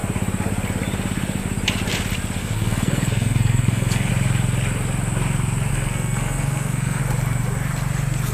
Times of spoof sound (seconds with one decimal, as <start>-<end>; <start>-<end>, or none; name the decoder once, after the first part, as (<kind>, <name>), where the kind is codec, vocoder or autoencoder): 2.4-4.1 (codec, SNAC); 5.7-7.0